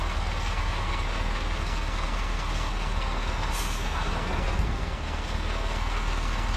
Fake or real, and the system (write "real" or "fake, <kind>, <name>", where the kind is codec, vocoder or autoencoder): fake, codec, SNAC